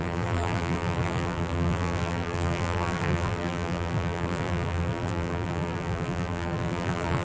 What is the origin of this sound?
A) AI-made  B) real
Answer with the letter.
A